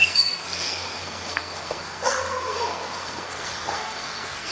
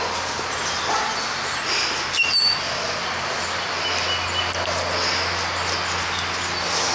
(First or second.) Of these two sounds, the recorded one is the second